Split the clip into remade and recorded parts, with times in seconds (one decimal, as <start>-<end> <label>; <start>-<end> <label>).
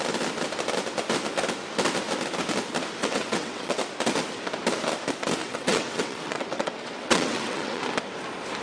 0.0-3.0 recorded; 3.0-3.8 remade; 3.8-5.4 recorded; 5.4-7.8 remade; 7.8-8.6 recorded